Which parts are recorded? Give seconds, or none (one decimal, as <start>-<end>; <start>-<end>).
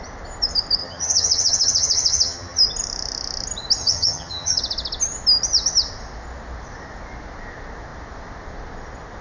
0.0-0.8; 2.6-3.8; 4.6-9.2